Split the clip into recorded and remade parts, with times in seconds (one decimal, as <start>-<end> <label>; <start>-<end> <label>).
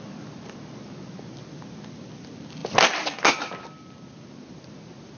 0.0-5.2 recorded